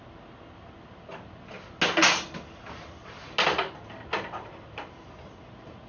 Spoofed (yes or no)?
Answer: no